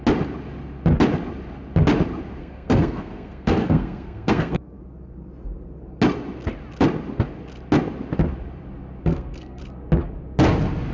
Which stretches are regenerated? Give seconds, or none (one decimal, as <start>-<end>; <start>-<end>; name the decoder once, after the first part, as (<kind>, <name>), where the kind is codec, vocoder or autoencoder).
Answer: 2.4-4.8 (codec, SNAC); 9.0-9.6